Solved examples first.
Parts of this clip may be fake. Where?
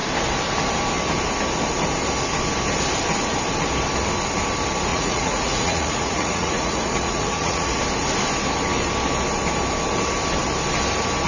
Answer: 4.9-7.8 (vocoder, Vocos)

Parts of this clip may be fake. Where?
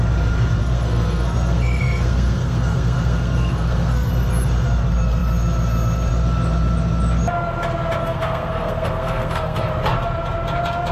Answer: 0.6-4.1 (codec, SNAC); 8.0-9.7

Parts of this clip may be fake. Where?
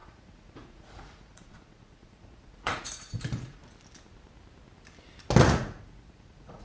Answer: 0.0-3.6 (vocoder, Vocos); 5.4-6.6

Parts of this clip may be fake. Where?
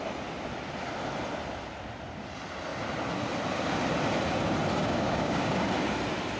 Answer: 4.8-5.6 (codec, DAC)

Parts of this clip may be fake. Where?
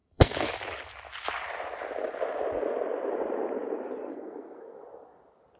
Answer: 0.0-0.5 (codec, SNAC); 4.1-4.8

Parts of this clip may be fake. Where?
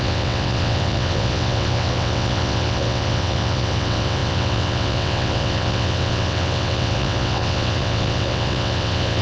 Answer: 0.0-9.2 (vocoder, WaveNeXt)